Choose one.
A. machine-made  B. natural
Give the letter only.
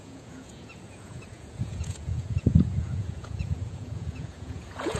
A